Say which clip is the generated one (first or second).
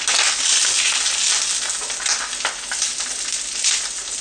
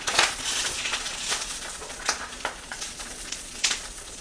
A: second